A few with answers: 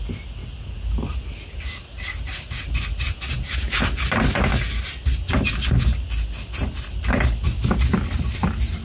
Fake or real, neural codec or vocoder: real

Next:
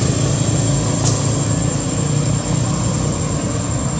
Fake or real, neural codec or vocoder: real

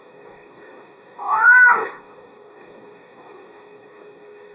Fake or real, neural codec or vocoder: fake, codec, DAC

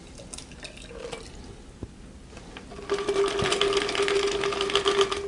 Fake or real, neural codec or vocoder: real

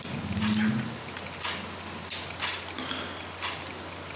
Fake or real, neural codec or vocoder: real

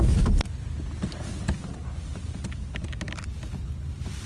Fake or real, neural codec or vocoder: real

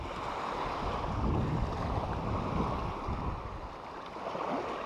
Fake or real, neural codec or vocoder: real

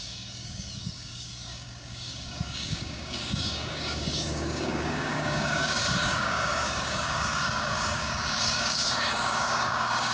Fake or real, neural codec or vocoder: fake, codec, DAC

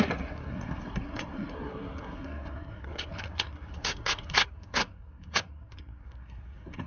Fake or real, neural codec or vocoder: fake, codec, SNAC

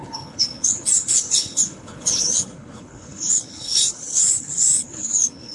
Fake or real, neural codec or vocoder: fake, codec, HILCodec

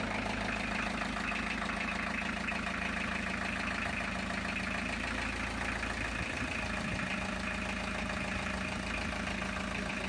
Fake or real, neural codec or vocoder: real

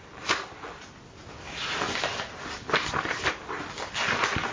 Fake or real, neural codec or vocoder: real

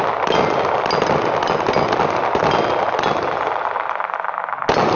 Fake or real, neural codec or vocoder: real